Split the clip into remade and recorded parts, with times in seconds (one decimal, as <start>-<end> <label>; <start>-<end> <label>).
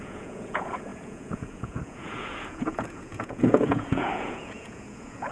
0.0-5.3 remade